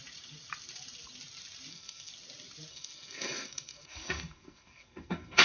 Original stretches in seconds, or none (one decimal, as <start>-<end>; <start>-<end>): 0.0-1.7; 2.1-2.7